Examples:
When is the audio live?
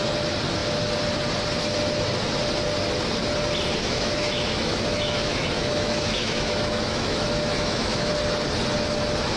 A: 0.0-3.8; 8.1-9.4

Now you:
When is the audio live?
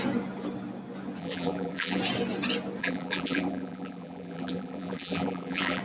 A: 0.0-1.2; 2.0-2.8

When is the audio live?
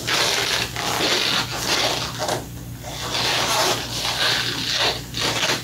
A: 0.0-5.6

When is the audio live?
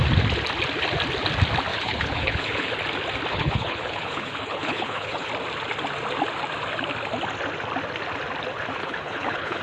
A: 0.0-1.7; 2.7-3.3; 5.3-8.8